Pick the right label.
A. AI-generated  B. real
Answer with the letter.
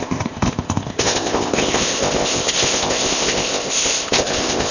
A